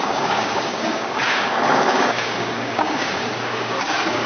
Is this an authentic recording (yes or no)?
no